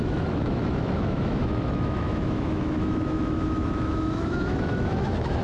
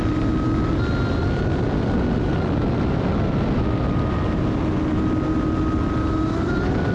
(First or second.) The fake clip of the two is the first